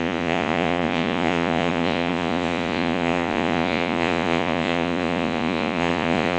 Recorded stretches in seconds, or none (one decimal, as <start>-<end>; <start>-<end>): none